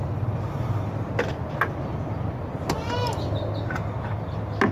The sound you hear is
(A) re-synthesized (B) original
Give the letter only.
B